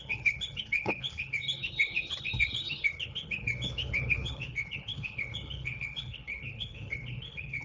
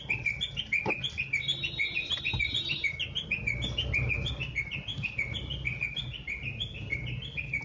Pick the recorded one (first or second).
second